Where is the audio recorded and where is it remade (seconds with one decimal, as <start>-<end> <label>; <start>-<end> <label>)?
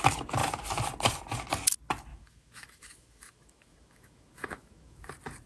0.0-2.1 recorded; 2.1-5.1 remade; 5.1-5.5 recorded